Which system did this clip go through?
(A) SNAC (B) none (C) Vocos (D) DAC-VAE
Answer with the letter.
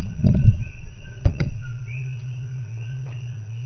C